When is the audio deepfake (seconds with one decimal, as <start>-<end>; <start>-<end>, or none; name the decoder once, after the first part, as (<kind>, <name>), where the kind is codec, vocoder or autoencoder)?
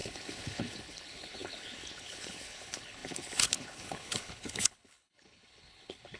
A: 0.0-6.2 (codec, HILCodec)